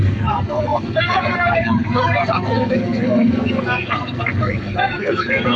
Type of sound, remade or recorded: remade